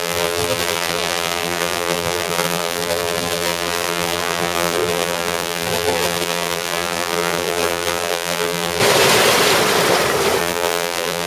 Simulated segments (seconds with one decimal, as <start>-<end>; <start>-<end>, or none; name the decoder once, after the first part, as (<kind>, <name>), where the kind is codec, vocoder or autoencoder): 0.0-8.8 (vocoder, BigVGAN v2); 10.4-11.3